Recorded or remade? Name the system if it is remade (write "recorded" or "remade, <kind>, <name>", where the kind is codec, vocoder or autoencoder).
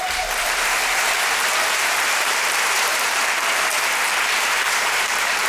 remade, vocoder, BigVGAN v2